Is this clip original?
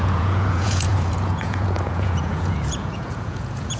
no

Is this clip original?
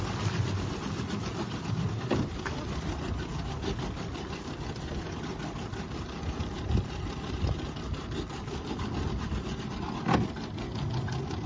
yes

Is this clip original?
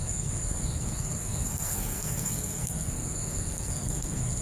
no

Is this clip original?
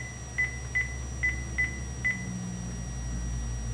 yes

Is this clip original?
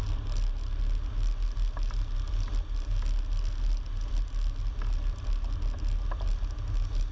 yes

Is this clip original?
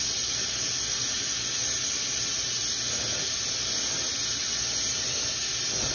yes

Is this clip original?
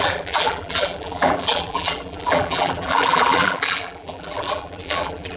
no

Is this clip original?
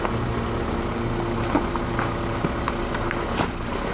yes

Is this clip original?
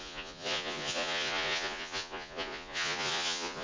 no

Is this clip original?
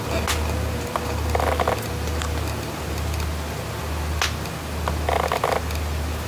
yes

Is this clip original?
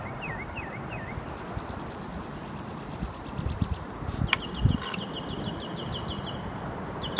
yes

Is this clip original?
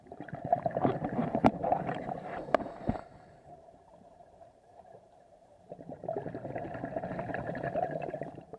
no